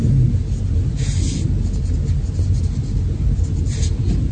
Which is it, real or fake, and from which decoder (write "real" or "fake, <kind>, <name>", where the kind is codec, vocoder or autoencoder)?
real